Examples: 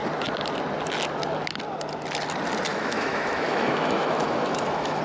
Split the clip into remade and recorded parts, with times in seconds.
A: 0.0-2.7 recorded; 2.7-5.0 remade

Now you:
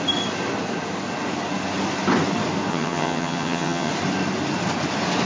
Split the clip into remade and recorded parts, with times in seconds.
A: 0.0-2.7 recorded; 2.7-3.9 remade; 3.9-5.3 recorded

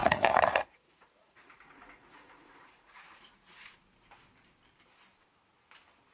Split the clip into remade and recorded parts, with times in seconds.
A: 0.0-3.7 remade; 3.7-6.1 recorded

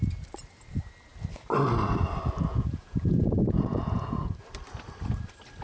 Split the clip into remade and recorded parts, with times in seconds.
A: 0.0-2.5 recorded; 2.5-4.3 remade; 4.3-5.6 recorded

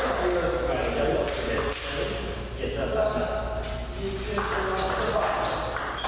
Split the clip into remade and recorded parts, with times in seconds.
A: 0.0-6.1 recorded

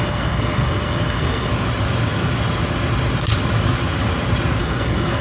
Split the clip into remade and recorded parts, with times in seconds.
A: 0.0-1.5 remade; 1.5-4.6 recorded; 4.6-5.2 remade

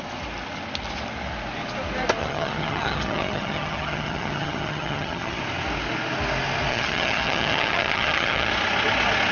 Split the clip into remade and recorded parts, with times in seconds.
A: 0.0-2.2 recorded; 2.2-5.4 remade; 5.4-6.7 recorded; 6.7-8.5 remade; 8.5-9.3 recorded

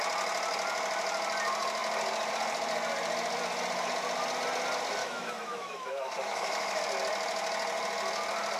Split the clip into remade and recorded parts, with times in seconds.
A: 0.0-5.0 recorded; 5.0-6.8 remade; 6.8-8.6 recorded